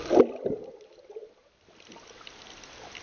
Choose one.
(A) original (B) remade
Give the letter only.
B